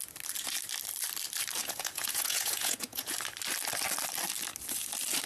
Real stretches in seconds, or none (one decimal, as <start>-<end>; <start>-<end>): 0.0-1.6; 3.1-5.3